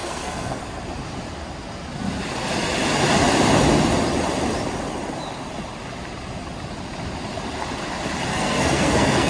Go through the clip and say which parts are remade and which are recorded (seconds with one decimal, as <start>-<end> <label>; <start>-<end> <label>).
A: 0.0-0.6 remade; 0.6-8.3 recorded; 8.3-9.3 remade